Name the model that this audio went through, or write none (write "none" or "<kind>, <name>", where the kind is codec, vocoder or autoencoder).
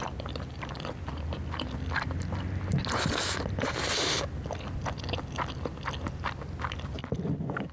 none